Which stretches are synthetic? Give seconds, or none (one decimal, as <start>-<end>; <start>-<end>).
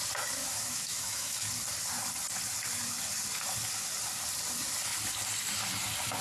0.4-1.5